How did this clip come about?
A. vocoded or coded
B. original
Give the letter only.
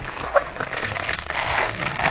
A